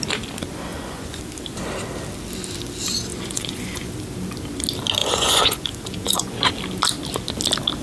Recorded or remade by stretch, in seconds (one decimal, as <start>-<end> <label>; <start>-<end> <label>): 0.0-0.7 recorded; 0.7-1.2 remade; 1.2-3.1 recorded; 3.1-3.9 remade; 3.9-5.0 recorded; 5.0-6.5 remade; 6.5-7.8 recorded